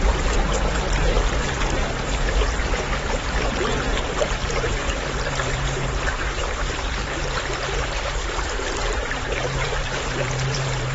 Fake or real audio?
fake